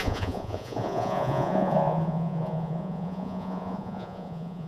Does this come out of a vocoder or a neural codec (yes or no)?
yes